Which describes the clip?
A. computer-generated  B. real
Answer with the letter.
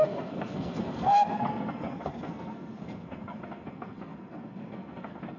A